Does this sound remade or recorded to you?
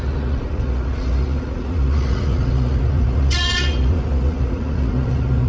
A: remade